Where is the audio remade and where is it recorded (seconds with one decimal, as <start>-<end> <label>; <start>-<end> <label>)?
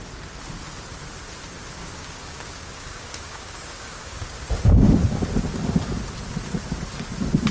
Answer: 0.0-1.8 recorded; 1.8-4.9 remade; 4.9-7.5 recorded